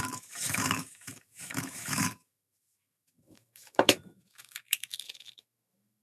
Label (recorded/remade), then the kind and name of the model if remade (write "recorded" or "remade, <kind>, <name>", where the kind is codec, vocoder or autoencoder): remade, autoencoder, DAC-VAE